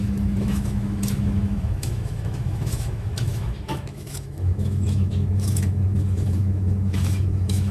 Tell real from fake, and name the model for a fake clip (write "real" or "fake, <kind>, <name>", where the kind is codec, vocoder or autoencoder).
fake, autoencoder, DAC-VAE